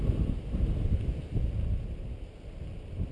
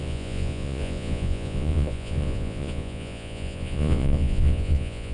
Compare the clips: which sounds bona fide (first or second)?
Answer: first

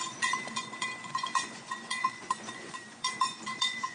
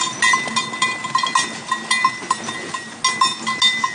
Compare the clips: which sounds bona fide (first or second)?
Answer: second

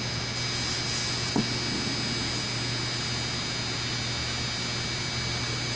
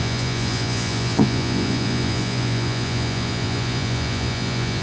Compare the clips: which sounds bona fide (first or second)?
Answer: first